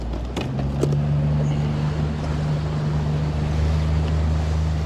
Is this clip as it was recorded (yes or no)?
yes